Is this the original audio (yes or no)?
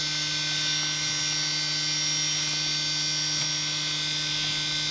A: yes